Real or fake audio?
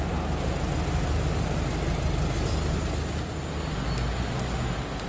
real